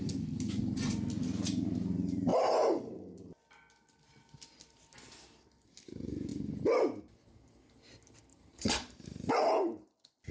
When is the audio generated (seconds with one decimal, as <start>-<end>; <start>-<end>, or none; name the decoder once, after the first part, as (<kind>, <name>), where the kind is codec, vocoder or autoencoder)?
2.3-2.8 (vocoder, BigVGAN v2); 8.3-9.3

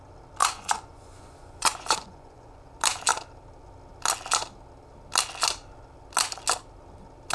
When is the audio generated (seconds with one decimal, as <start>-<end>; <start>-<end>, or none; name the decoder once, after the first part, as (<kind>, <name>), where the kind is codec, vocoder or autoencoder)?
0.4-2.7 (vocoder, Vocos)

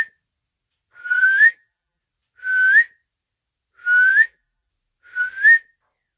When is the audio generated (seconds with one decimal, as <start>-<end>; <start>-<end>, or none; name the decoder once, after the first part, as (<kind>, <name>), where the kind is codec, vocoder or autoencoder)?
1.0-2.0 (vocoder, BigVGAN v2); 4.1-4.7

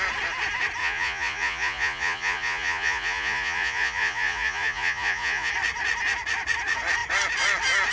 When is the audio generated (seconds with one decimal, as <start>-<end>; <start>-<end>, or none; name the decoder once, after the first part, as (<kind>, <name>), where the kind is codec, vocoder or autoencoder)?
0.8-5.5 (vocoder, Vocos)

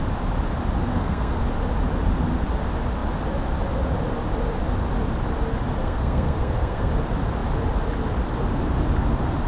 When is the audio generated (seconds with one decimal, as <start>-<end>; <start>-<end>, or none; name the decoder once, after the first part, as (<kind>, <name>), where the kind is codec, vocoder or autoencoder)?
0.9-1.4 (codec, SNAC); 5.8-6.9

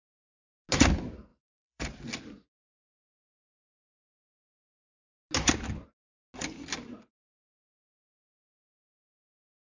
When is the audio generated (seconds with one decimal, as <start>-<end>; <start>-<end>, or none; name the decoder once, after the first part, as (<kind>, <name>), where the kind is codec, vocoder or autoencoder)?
1.3-2.0 (vocoder, BigVGAN v2)